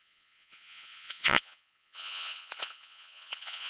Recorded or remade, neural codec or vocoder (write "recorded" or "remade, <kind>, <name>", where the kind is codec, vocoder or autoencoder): remade, vocoder, Vocos